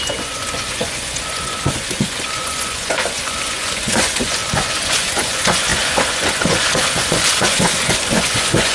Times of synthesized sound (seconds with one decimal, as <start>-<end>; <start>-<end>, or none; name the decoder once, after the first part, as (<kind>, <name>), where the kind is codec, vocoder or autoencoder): 0.0-8.7 (vocoder, Vocos)